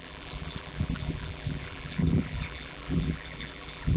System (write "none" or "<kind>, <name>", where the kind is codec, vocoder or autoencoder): vocoder, BigVGAN v2